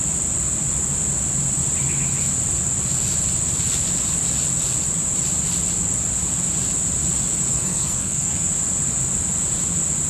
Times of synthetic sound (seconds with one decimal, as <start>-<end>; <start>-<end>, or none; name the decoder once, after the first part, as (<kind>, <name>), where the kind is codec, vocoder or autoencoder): 7.5-8.5 (codec, SNAC)